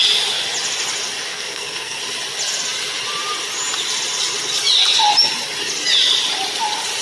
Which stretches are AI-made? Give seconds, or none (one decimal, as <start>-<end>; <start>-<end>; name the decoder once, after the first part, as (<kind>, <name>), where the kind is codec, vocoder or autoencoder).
1.3-2.0 (codec, SNAC)